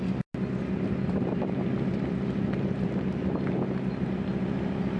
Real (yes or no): yes